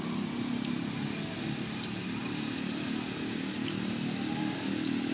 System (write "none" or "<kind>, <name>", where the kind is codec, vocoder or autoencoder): none